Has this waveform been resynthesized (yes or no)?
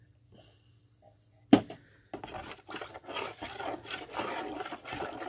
yes